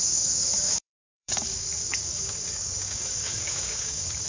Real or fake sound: fake